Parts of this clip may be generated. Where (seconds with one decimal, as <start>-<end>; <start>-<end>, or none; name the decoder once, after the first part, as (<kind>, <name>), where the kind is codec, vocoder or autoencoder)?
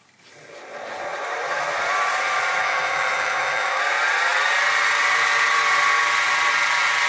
2.6-3.8 (autoencoder, DAC-VAE)